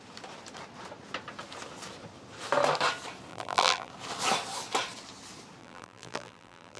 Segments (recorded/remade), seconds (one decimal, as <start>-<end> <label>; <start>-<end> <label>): 0.0-3.3 recorded; 3.3-3.9 remade; 3.9-5.6 recorded; 5.6-6.8 remade